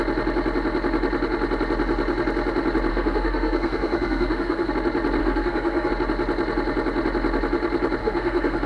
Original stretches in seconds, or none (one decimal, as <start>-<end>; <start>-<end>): 0.0-2.9; 4.7-5.2; 5.9-8.0